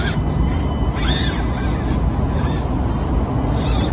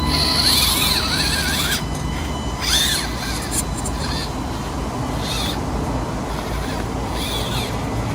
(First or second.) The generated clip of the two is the first